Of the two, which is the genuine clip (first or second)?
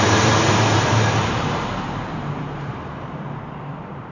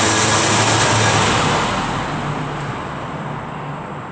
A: second